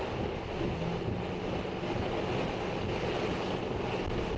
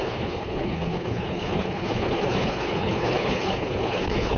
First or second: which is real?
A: first